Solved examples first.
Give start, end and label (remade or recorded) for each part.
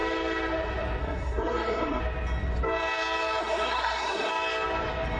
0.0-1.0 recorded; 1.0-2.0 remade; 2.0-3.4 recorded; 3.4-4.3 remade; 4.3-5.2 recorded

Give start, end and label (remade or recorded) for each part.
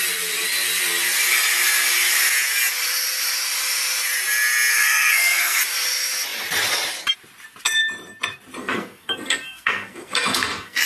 0.0-4.7 recorded; 4.7-5.6 remade; 5.6-8.6 recorded; 8.6-10.9 remade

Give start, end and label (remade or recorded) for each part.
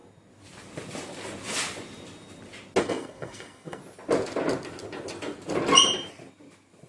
0.0-2.8 recorded; 2.8-3.8 remade; 3.8-6.9 recorded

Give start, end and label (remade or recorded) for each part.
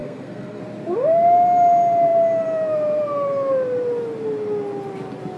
0.0-0.6 remade; 0.6-5.4 recorded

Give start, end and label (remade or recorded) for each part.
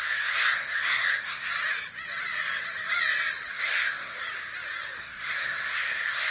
0.0-1.5 remade; 1.5-3.5 recorded; 3.5-4.2 remade; 4.2-5.0 recorded; 5.0-6.3 remade